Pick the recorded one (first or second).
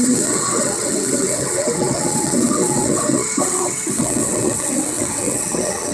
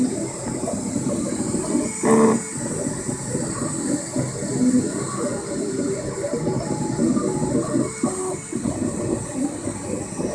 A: second